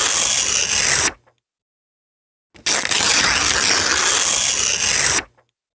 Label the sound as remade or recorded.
recorded